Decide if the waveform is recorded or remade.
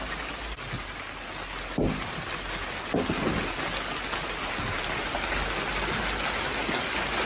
recorded